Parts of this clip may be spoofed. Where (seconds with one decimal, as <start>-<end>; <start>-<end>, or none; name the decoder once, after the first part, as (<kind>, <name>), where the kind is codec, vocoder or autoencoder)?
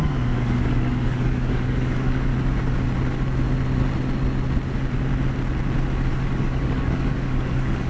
0.0-2.3 (codec, DAC); 6.4-7.9